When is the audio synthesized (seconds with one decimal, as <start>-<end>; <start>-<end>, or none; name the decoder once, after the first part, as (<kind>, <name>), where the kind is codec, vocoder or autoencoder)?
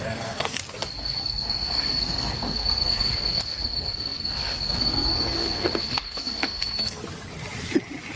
0.0-0.6 (codec, SNAC); 1.2-7.0